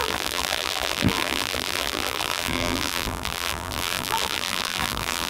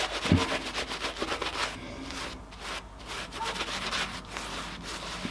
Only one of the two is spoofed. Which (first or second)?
first